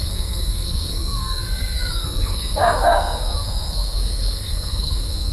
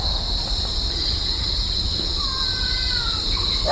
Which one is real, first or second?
second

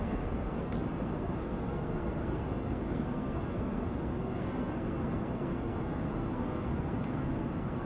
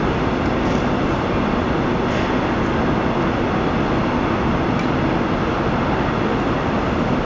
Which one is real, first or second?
second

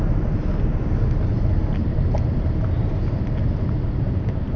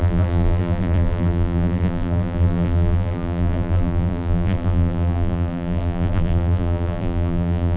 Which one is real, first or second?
first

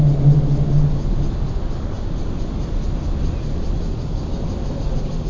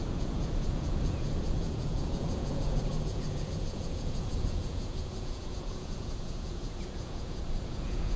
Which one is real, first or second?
first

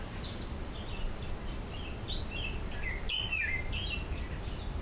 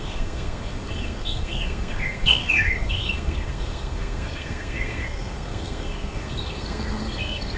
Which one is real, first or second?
first